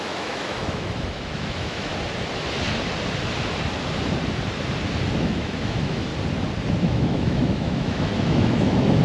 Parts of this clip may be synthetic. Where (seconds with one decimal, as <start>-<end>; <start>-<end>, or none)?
0.0-1.9; 5.2-6.1; 6.8-9.0